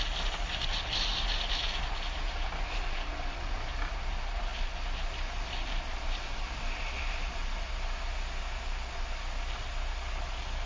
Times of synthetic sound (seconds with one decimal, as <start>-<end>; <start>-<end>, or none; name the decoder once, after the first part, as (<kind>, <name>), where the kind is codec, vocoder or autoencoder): none